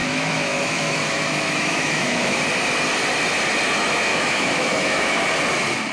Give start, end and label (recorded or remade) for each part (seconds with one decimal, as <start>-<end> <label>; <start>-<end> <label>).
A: 0.0-2.4 remade; 2.4-4.1 recorded; 4.1-5.3 remade; 5.3-5.9 recorded